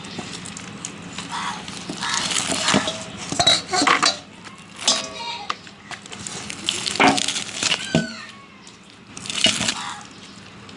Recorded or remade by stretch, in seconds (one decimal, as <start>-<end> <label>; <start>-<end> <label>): 0.0-10.8 recorded